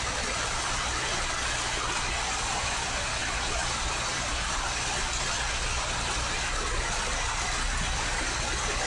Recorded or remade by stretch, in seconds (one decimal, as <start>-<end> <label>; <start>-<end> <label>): 0.0-8.9 recorded